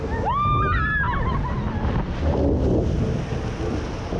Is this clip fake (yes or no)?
no